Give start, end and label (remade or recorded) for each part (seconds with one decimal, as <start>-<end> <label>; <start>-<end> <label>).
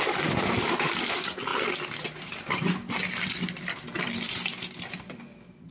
0.0-5.7 recorded